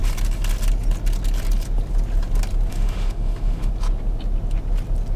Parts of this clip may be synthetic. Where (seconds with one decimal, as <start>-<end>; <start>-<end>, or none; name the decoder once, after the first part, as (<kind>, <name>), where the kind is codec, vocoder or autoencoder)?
2.7-3.7 (autoencoder, DAC-VAE)